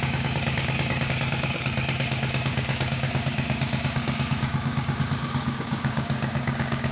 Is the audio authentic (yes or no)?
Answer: no